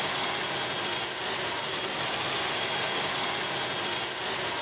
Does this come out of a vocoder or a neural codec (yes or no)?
no